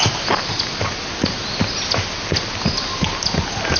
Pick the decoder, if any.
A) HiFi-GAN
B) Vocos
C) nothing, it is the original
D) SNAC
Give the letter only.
C